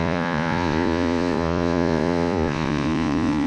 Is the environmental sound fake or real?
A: fake